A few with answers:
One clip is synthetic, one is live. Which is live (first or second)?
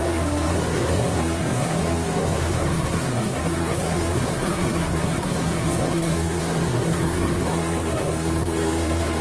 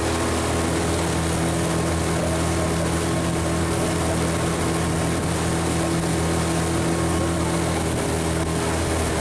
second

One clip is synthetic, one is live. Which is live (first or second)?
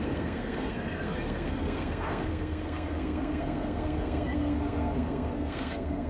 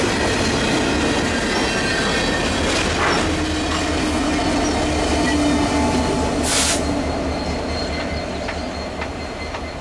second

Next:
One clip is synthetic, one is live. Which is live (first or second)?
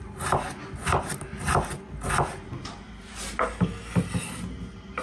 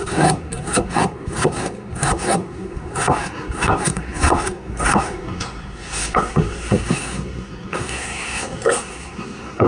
first